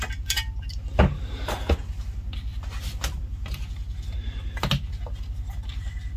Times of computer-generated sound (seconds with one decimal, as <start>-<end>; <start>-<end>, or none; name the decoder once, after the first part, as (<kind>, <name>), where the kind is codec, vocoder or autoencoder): none